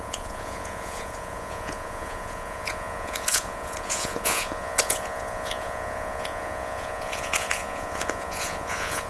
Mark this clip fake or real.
fake